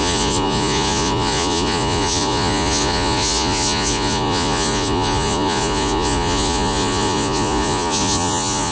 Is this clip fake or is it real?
fake